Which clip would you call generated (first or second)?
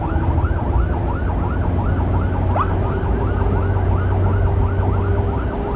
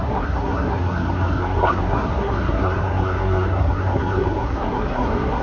second